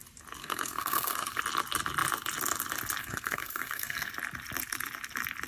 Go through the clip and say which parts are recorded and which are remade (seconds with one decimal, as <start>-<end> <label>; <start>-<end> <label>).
0.0-0.4 recorded; 0.4-1.4 remade; 1.4-3.0 recorded; 3.0-4.1 remade; 4.1-5.5 recorded

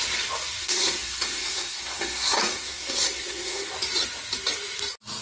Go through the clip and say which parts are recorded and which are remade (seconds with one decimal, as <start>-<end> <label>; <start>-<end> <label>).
0.0-0.6 recorded; 0.6-3.7 remade; 3.7-5.2 recorded